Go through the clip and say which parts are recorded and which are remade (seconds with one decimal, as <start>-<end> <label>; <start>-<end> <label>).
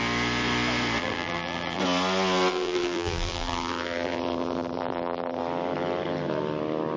0.0-1.0 recorded; 1.0-1.8 remade; 1.8-2.5 recorded; 2.5-5.4 remade; 5.4-7.0 recorded